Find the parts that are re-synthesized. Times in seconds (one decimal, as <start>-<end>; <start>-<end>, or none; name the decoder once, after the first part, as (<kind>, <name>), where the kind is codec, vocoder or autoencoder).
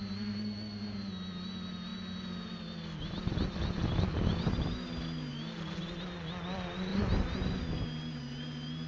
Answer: none